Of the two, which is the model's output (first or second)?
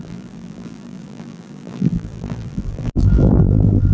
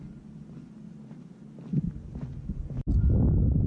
first